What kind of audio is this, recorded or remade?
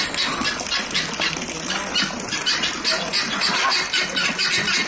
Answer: recorded